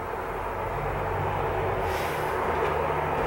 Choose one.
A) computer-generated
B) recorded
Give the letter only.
B